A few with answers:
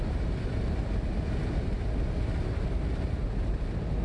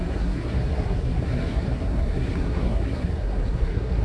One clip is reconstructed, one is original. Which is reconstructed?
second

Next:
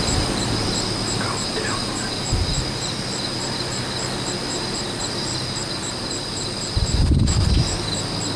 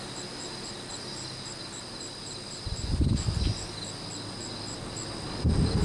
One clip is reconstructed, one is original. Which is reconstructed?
first